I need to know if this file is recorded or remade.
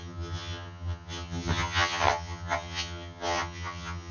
remade